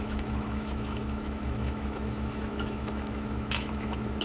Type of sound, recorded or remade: remade